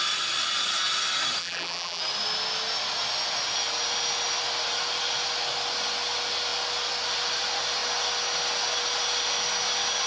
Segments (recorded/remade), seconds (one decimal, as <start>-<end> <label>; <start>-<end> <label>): 0.0-1.4 recorded; 1.4-2.0 remade; 2.0-10.1 recorded